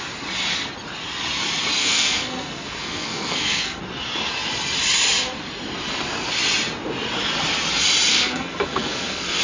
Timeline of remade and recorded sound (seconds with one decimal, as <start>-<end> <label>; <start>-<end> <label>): 0.0-1.8 recorded; 1.8-3.8 remade; 3.8-8.1 recorded; 8.1-9.4 remade